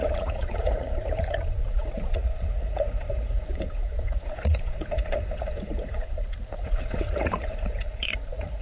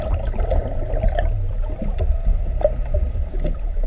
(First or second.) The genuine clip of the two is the second